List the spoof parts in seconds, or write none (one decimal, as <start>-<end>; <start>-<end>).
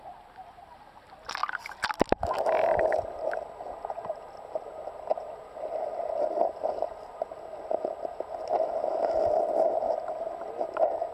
5.1-6.7; 8.5-10.7